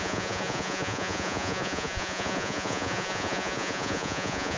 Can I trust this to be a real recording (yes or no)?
no